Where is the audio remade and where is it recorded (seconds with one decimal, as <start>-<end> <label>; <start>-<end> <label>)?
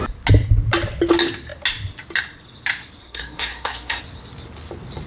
0.0-3.0 recorded; 3.0-4.0 remade; 4.0-5.1 recorded